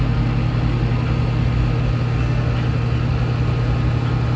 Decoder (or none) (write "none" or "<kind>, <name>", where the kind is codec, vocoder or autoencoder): none